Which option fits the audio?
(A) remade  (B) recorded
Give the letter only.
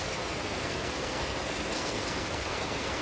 A